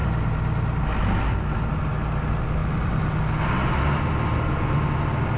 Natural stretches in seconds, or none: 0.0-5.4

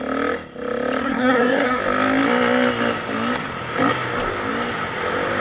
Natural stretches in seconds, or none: 0.0-1.0; 1.8-5.4

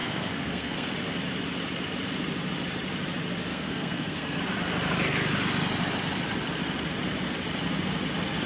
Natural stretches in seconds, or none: 0.9-3.5; 4.4-8.5

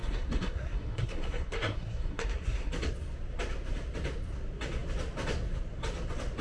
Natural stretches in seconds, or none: 2.7-6.4